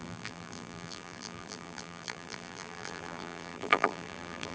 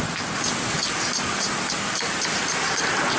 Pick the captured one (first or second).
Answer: second